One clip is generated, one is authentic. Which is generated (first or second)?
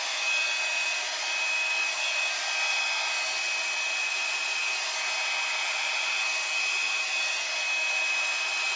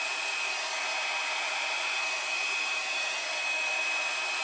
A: second